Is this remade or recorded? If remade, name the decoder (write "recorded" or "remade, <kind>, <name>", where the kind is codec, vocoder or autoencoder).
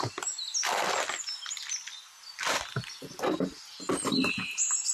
recorded